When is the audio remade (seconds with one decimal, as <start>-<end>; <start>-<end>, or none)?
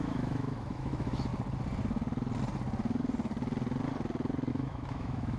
0.0-1.3; 4.5-5.4